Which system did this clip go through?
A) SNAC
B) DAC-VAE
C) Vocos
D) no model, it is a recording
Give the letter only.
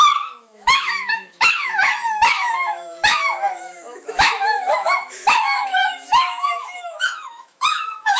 B